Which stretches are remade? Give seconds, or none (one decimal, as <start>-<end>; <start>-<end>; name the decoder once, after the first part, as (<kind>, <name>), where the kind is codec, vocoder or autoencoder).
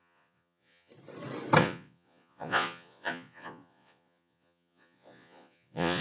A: 0.0-0.9 (vocoder, Vocos); 1.6-6.0